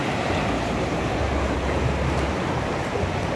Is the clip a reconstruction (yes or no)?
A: yes